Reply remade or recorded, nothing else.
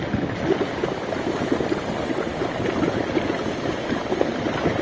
recorded